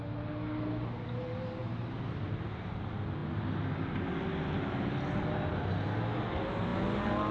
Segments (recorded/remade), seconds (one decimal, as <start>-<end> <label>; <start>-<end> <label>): 0.0-7.3 recorded